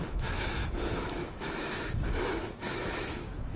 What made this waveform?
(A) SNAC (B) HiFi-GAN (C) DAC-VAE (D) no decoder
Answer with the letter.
C